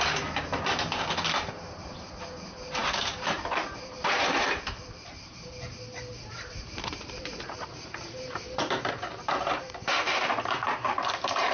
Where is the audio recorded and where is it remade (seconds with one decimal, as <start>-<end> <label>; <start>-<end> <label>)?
0.0-0.5 remade; 0.5-1.1 recorded; 1.1-11.5 remade

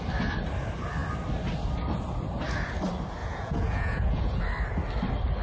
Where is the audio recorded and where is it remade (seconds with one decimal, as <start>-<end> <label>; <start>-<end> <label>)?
0.0-3.2 recorded; 3.2-4.4 remade; 4.4-5.4 recorded

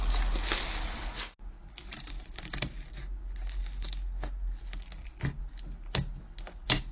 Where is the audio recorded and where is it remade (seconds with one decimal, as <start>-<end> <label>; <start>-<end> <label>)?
0.0-1.9 recorded; 1.9-2.9 remade; 2.9-6.9 recorded

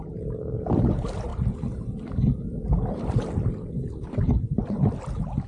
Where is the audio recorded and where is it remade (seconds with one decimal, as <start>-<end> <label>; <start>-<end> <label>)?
0.0-5.5 recorded